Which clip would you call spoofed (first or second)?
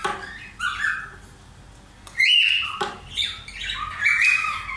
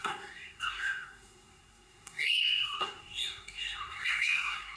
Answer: second